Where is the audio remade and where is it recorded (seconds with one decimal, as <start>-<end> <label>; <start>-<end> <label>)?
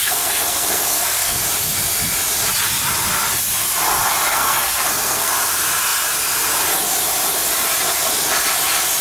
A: 0.0-1.4 remade; 1.4-4.3 recorded; 4.3-5.3 remade; 5.3-9.0 recorded